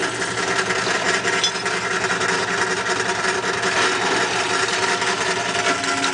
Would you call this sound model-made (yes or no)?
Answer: no